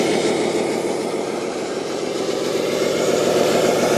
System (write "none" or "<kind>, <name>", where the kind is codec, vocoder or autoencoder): vocoder, BigVGAN v2